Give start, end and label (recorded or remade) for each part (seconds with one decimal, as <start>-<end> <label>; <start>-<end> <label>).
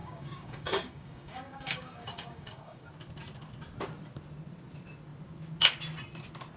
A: 0.0-2.9 remade; 2.9-6.6 recorded